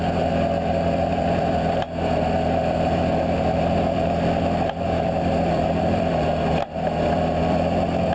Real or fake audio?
fake